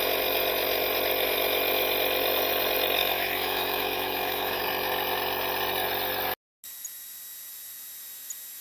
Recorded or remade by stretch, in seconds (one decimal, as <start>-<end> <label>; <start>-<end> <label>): 0.0-3.0 recorded; 3.0-4.6 remade; 4.6-8.6 recorded